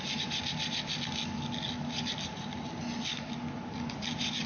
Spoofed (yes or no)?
no